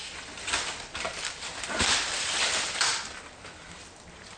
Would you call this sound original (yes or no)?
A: yes